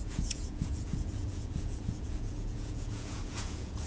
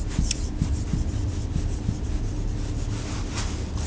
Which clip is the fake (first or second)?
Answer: first